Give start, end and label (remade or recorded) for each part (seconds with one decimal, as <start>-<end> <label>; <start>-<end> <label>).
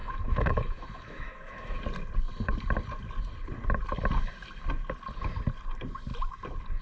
0.0-1.8 remade; 1.8-6.8 recorded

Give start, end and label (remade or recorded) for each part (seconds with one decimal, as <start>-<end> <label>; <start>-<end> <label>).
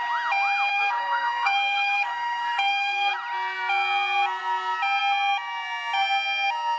0.0-0.7 recorded; 0.7-3.1 remade; 3.1-6.8 recorded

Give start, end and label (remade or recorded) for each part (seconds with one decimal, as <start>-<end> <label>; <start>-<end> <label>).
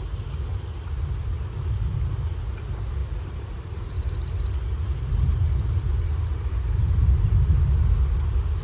0.0-3.0 recorded; 3.0-7.8 remade; 7.8-8.6 recorded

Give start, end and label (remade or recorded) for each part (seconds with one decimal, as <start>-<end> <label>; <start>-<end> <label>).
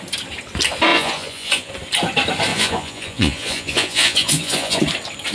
0.0-0.9 recorded; 0.9-1.7 remade; 1.7-2.5 recorded; 2.5-4.8 remade; 4.8-5.3 recorded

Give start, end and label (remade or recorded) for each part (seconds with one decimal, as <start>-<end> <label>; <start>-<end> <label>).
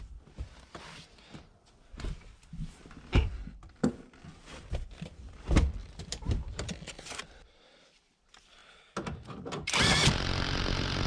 0.0-8.6 remade; 8.6-9.3 recorded; 9.3-11.1 remade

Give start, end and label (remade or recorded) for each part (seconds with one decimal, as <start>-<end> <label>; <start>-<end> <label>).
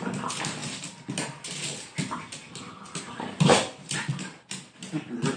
0.0-5.4 recorded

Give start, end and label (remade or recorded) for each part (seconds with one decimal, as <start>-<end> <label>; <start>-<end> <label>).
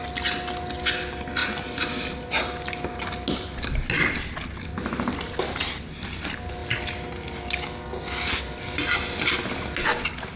0.0-10.4 recorded